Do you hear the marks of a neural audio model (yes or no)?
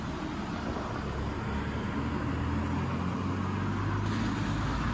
no